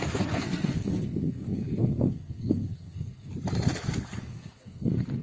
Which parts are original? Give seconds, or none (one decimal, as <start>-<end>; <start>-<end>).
3.3-4.2